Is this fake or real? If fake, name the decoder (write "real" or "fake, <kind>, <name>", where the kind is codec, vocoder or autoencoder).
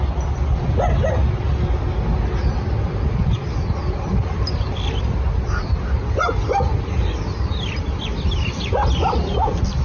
real